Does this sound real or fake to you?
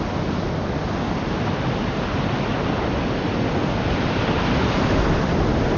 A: real